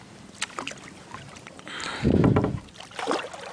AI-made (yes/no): no